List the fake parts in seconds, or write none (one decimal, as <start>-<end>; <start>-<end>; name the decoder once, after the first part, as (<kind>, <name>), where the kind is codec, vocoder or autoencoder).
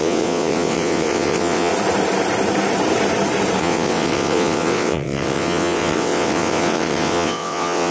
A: 0.0-1.7 (vocoder, WaveNeXt); 3.6-7.9